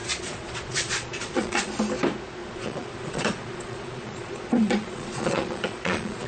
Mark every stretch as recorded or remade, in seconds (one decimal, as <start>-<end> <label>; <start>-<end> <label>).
0.0-1.7 remade; 1.7-2.4 recorded; 2.4-6.3 remade